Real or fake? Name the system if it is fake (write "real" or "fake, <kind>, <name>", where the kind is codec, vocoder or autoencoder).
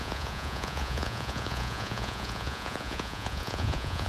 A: fake, vocoder, Vocos